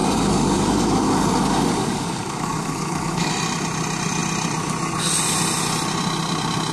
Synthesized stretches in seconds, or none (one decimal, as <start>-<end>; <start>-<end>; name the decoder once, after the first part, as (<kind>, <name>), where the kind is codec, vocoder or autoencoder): 0.0-3.3 (codec, DAC)